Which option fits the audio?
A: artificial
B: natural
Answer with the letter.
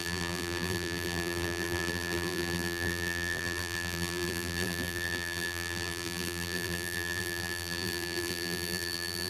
A